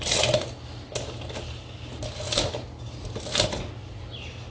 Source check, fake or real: real